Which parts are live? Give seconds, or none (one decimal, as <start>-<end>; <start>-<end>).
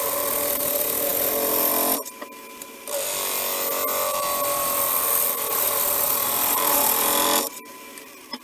0.0-8.4